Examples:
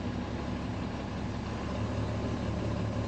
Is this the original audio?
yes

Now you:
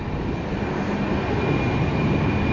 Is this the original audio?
yes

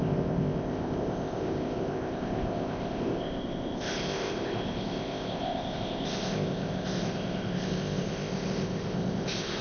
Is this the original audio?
no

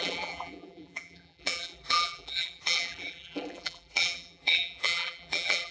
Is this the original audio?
no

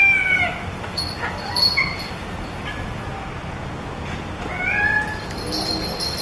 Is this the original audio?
yes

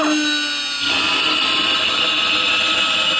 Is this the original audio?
yes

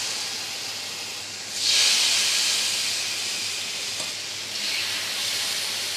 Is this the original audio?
yes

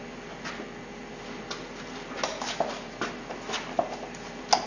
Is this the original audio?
yes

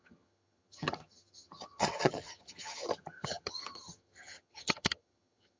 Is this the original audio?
no